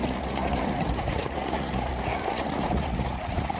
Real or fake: fake